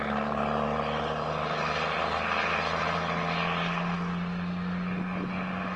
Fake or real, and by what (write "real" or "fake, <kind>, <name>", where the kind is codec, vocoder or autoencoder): real